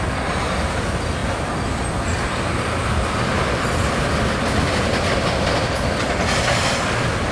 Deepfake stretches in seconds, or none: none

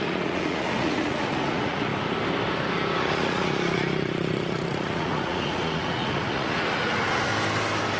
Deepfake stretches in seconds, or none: 0.0-1.9 (vocoder, Vocos); 3.0-7.3

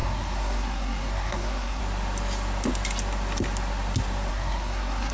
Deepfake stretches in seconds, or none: 0.0-1.8 (codec, SNAC); 4.3-5.1

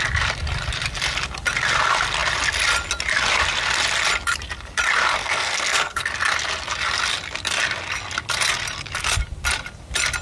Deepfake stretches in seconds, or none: 5.2-6.1 (codec, SNAC)

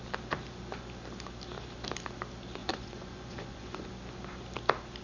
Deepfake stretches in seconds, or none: 2.6-3.9 (vocoder, Vocos)

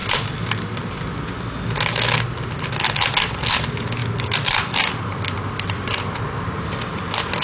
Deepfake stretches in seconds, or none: 0.0-1.4 (vocoder, BigVGAN v2); 4.0-7.0

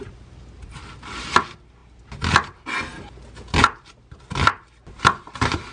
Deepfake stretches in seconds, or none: none

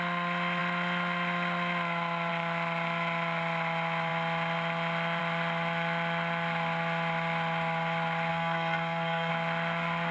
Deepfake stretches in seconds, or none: 8.3-9.3 (codec, SNAC)